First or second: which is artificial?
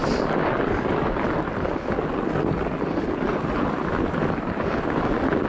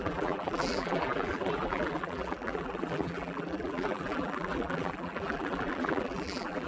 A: second